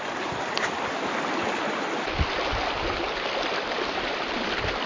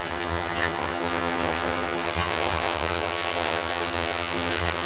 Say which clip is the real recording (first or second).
first